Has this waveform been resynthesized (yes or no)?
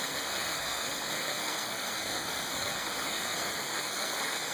yes